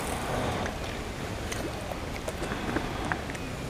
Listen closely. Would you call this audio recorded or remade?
recorded